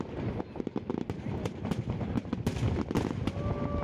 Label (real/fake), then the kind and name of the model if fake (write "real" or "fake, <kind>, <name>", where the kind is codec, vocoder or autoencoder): real